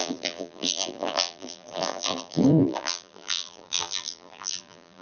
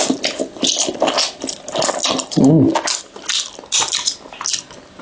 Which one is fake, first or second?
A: first